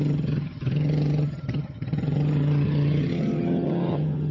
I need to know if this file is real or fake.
fake